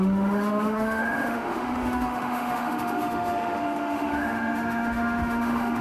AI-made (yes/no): yes